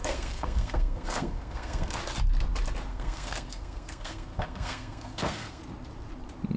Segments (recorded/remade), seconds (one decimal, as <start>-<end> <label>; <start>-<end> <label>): 0.0-2.0 remade; 2.0-2.9 recorded; 2.9-5.6 remade; 5.6-6.6 recorded